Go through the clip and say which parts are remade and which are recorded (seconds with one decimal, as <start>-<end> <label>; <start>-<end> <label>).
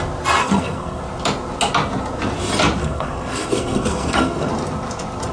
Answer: 0.0-0.4 recorded; 0.4-1.0 remade; 1.0-2.8 recorded; 2.8-4.5 remade; 4.5-5.3 recorded